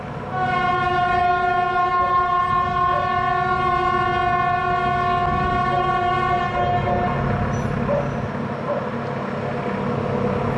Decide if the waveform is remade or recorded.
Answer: recorded